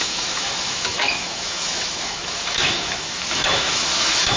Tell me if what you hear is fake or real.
fake